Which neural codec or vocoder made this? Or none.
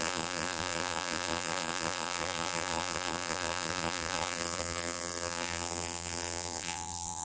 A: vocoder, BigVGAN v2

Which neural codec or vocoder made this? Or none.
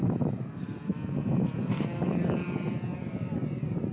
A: vocoder, BigVGAN v2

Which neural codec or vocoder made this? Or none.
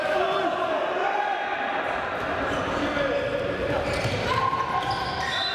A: vocoder, BigVGAN v2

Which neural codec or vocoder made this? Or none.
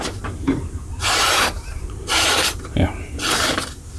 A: vocoder, BigVGAN v2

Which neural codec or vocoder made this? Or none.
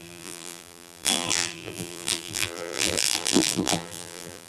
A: vocoder, BigVGAN v2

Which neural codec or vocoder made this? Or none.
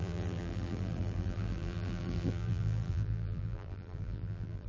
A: vocoder, BigVGAN v2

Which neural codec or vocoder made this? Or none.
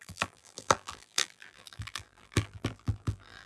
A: vocoder, BigVGAN v2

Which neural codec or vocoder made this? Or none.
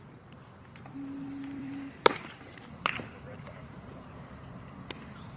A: vocoder, BigVGAN v2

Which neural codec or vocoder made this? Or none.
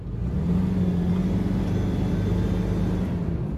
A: none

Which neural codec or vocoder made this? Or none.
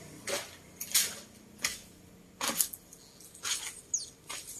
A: none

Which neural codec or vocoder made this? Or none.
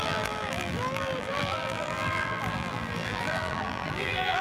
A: vocoder, BigVGAN v2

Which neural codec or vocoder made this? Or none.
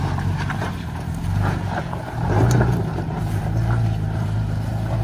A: vocoder, BigVGAN v2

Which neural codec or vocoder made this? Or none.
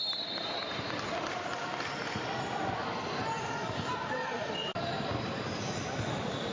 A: vocoder, BigVGAN v2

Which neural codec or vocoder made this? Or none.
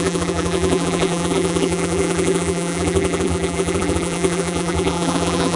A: vocoder, BigVGAN v2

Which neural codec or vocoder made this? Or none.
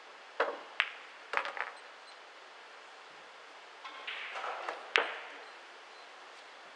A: none